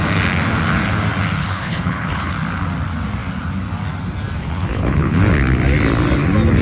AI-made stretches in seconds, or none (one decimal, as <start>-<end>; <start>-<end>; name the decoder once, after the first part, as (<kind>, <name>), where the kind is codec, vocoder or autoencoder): 1.4-2.3 (codec, HILCodec); 4.4-5.2